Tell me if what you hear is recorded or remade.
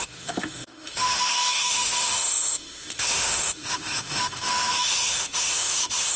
remade